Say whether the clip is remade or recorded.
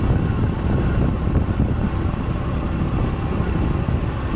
recorded